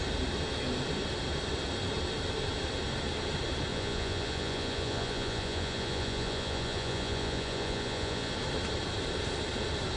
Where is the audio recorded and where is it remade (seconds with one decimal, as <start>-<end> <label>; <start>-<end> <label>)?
0.0-3.7 recorded; 3.7-8.3 remade; 8.3-10.0 recorded